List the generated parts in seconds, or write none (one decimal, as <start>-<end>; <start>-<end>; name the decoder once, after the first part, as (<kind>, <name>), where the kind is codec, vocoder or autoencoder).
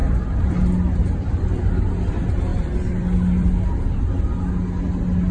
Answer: 0.0-1.4 (vocoder, BigVGAN v2); 2.5-3.8